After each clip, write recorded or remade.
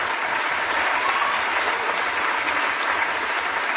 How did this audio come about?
recorded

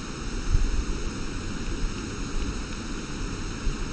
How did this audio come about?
recorded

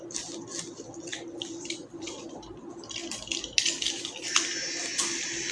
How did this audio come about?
recorded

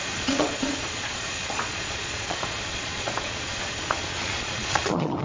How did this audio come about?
remade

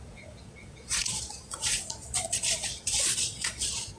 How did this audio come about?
remade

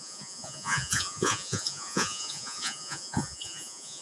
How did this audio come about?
remade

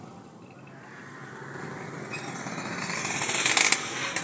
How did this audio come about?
recorded